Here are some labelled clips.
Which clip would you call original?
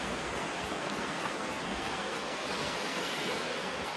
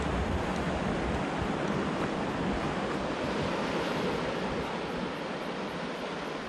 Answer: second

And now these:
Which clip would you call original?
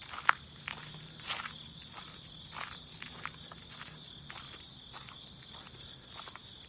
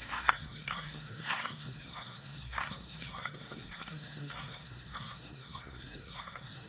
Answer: first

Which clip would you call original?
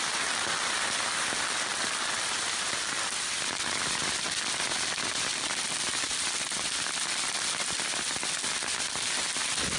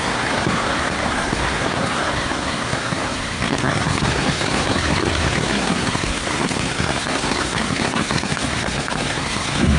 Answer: first